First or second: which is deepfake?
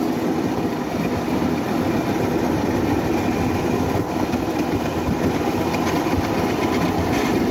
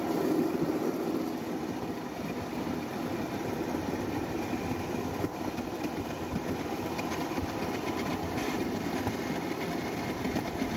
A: second